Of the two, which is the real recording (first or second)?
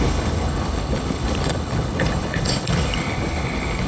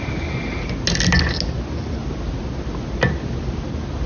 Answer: second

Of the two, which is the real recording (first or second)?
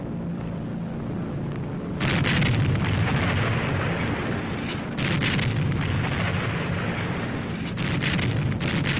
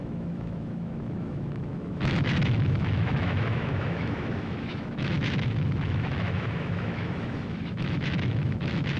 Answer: first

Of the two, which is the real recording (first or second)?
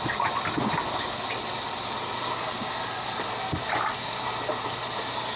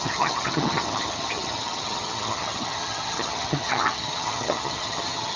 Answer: first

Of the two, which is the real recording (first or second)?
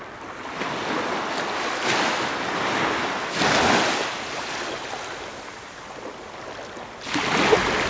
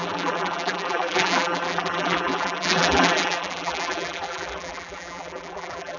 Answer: first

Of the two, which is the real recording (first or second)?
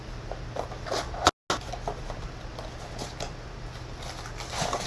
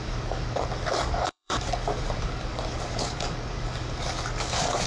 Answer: first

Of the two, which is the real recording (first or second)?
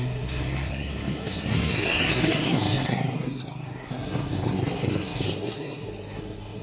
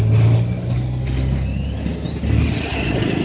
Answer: second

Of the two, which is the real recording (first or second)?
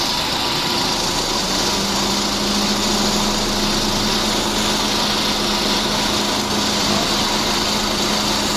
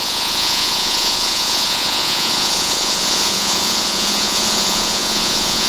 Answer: first